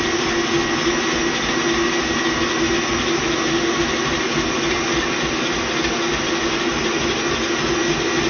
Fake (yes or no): no